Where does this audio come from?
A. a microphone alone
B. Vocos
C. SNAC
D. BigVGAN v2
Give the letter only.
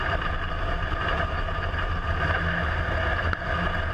A